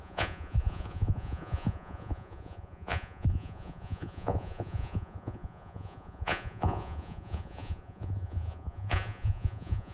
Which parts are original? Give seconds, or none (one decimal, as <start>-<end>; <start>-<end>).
none

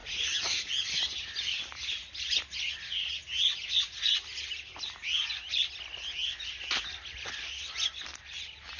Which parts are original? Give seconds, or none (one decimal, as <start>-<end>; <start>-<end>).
0.7-8.8